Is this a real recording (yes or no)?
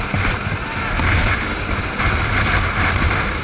yes